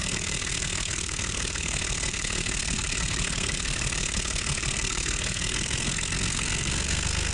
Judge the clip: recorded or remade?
remade